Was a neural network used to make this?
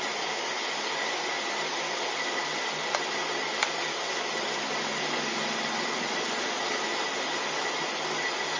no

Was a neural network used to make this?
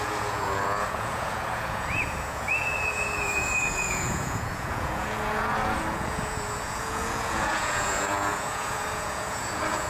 yes